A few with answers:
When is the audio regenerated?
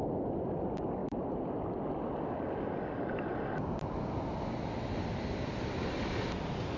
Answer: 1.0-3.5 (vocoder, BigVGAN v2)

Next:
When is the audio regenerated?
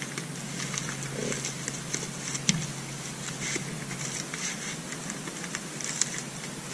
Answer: none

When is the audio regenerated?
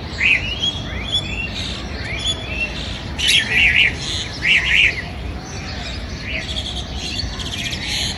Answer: none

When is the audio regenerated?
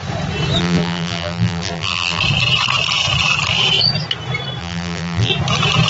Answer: 0.6-2.2 (vocoder, BigVGAN v2); 4.6-5.3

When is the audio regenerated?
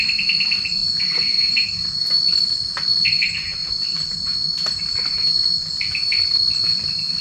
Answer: 0.8-2.3 (vocoder, BigVGAN v2); 3.6-5.3